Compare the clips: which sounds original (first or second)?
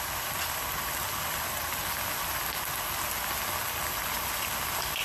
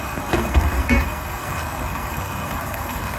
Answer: first